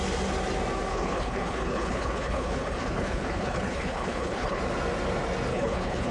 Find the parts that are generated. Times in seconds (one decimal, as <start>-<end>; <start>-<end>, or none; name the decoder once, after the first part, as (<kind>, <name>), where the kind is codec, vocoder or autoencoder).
0.9-4.6 (codec, HILCodec); 5.5-6.1